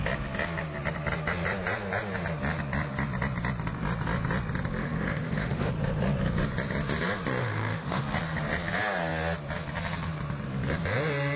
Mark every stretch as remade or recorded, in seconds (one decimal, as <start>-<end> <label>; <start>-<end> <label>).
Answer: 0.0-4.8 recorded; 4.8-5.7 remade; 5.7-7.4 recorded; 7.4-8.0 remade; 8.0-11.4 recorded